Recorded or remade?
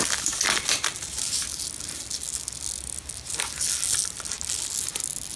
recorded